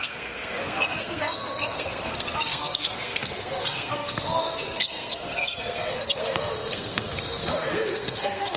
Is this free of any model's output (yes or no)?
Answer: no